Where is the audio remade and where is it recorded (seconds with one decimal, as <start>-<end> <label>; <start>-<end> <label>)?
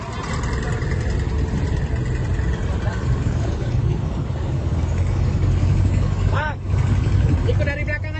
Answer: 0.0-2.9 recorded; 2.9-7.5 remade; 7.5-8.2 recorded